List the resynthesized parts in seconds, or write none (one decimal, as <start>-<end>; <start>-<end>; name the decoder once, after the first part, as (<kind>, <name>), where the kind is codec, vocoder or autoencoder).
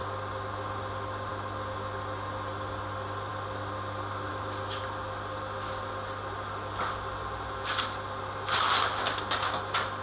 none